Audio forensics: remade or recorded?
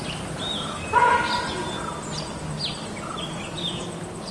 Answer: recorded